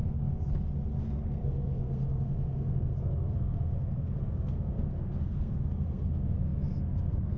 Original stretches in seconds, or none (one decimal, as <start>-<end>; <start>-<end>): 0.0-1.0